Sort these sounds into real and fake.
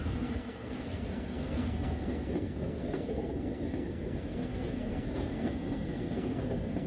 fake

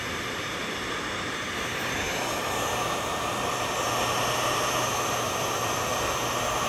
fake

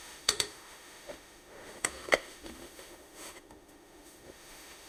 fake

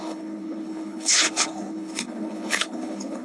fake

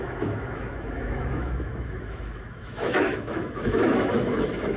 fake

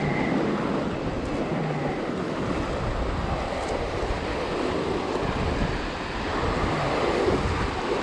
real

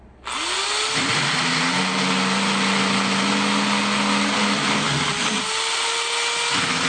real